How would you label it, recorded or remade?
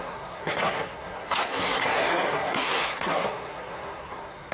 remade